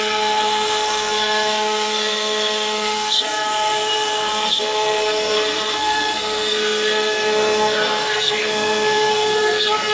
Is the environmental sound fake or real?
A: fake